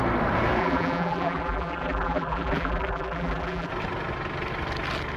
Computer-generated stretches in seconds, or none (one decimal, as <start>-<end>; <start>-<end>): 0.6-3.7